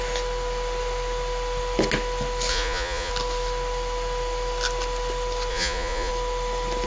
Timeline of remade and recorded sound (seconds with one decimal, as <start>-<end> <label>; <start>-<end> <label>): 0.0-2.5 recorded; 2.5-3.1 remade; 3.1-5.5 recorded; 5.5-6.1 remade; 6.1-6.9 recorded